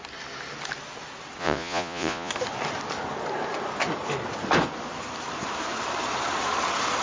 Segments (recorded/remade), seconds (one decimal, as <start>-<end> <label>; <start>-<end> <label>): 0.0-1.4 recorded; 1.4-2.3 remade; 2.3-7.0 recorded